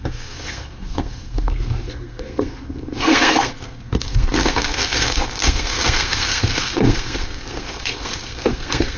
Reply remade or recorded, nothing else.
remade